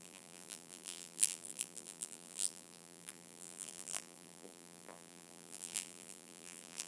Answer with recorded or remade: remade